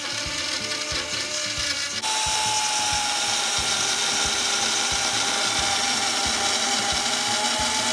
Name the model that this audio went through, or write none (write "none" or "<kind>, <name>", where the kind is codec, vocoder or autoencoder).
none